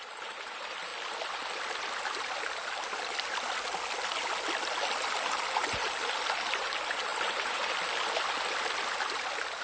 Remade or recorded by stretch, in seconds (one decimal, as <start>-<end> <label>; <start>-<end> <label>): 0.0-9.6 recorded